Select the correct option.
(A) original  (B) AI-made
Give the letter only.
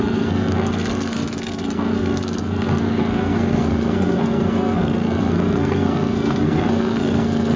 B